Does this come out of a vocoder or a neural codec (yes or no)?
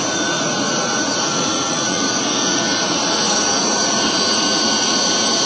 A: yes